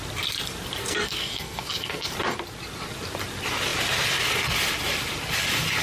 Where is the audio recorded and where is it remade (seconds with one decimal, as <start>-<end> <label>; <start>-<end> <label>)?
0.0-0.8 recorded; 0.8-2.1 remade; 2.1-5.8 recorded